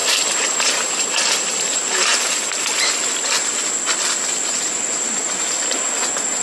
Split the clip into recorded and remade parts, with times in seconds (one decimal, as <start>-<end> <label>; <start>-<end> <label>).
0.0-1.5 remade; 1.5-6.4 recorded